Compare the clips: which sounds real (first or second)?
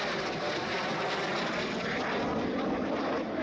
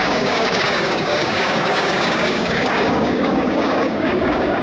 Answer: first